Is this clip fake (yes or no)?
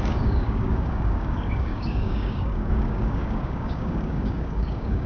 yes